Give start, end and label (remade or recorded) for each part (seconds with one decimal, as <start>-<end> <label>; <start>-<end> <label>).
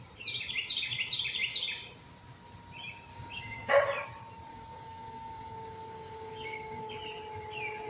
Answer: 0.0-3.1 recorded; 3.1-3.7 remade; 3.7-4.5 recorded; 4.5-6.9 remade; 6.9-7.9 recorded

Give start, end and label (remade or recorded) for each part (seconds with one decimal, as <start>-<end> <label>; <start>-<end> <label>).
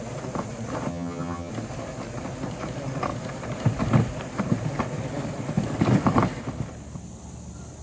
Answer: 0.0-0.9 recorded; 0.9-1.5 remade; 1.5-7.8 recorded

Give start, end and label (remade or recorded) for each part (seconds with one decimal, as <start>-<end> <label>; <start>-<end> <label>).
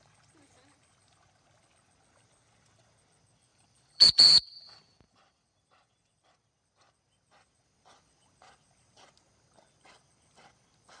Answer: 0.0-3.5 recorded; 3.5-4.8 remade; 4.8-11.0 recorded